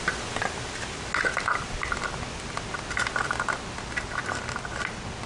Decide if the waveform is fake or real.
real